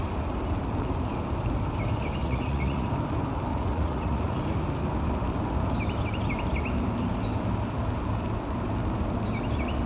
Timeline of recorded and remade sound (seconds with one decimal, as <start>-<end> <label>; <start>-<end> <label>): 0.0-2.2 recorded; 2.2-2.9 remade; 2.9-3.5 recorded; 3.5-4.4 remade; 4.4-9.9 recorded